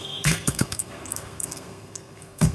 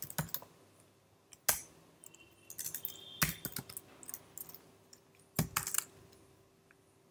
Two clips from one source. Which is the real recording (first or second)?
second